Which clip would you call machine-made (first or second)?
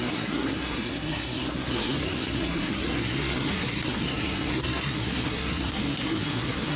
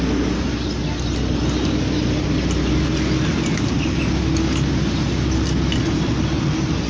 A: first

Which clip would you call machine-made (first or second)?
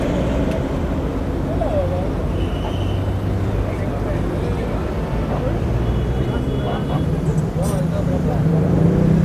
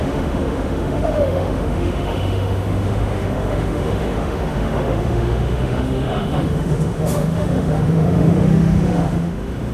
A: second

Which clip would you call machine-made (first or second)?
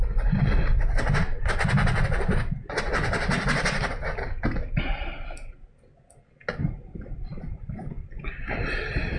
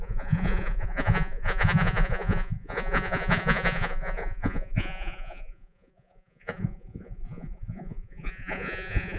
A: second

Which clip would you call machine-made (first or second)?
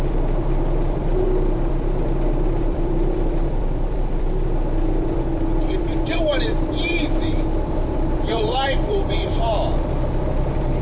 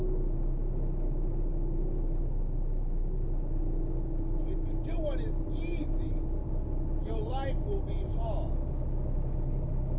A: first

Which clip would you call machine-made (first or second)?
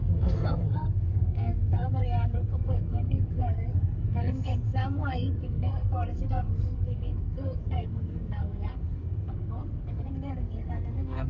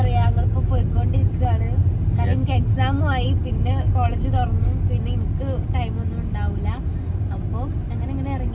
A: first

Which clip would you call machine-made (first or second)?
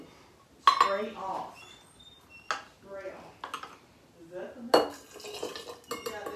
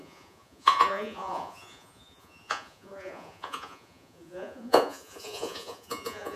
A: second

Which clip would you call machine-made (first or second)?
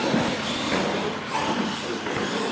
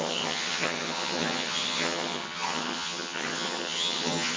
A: second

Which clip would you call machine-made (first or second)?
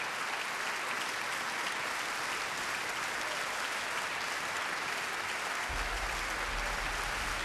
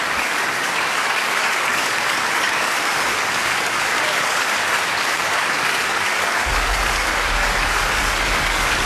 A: second